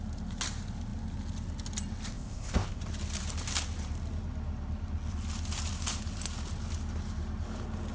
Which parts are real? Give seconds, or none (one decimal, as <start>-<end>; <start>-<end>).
0.0-2.1; 2.8-7.9